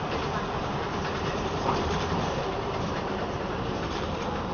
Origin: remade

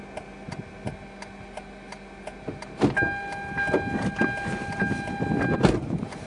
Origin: recorded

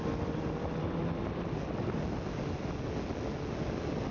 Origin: recorded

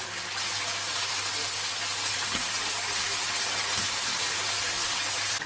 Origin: recorded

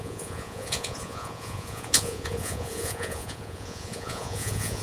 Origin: remade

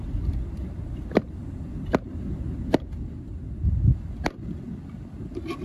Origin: recorded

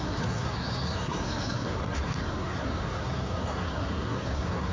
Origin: remade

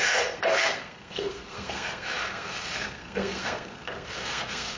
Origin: remade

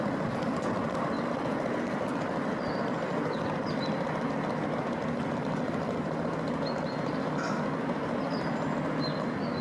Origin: recorded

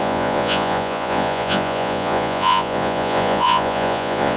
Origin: remade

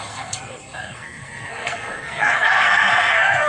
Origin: remade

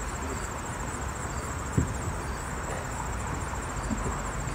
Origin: recorded